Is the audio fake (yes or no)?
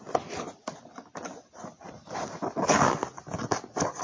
no